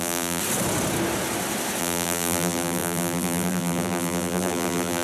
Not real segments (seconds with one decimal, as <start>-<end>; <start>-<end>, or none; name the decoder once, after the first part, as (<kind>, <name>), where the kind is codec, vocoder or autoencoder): 0.0-0.4 (vocoder, BigVGAN v2); 1.8-5.0